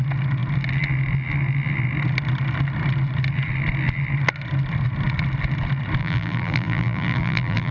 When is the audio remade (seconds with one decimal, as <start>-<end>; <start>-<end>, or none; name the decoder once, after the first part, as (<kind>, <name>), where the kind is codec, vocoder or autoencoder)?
6.0-7.7 (vocoder, BigVGAN v2)